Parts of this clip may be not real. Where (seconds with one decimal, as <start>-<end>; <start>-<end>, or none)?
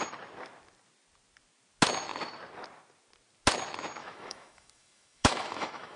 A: 4.0-6.0